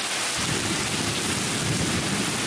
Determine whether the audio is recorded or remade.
recorded